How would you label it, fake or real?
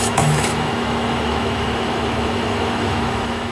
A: fake